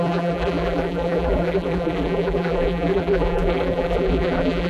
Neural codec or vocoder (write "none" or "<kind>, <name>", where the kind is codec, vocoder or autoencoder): vocoder, BigVGAN v2